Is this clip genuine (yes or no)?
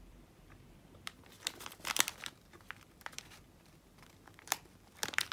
no